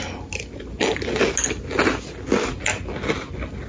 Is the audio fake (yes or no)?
no